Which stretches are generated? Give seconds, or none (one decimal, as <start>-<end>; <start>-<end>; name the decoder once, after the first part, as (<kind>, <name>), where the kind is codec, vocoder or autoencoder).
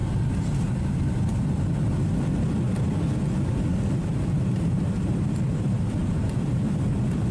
3.7-6.6 (vocoder, BigVGAN v2)